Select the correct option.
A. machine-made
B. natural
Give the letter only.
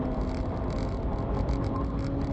B